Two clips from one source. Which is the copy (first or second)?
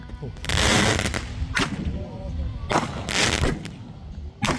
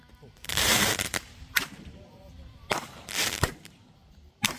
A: second